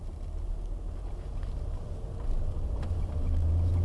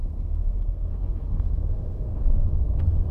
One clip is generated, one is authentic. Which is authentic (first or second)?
first